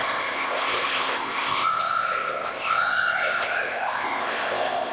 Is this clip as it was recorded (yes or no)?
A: no